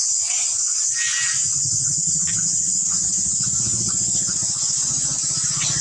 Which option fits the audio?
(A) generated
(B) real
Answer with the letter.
B